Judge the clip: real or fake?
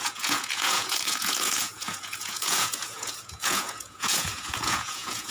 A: fake